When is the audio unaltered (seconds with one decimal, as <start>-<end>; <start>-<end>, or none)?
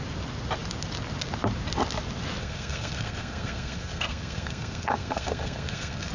0.0-2.4